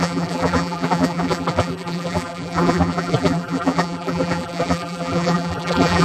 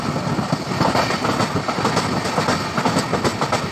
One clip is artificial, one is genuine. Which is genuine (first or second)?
second